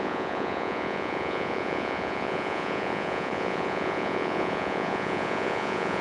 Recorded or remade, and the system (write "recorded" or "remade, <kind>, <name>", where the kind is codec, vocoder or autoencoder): remade, vocoder, Vocos